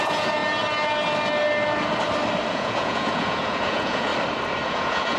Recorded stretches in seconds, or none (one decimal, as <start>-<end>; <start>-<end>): 0.4-2.5; 4.1-4.7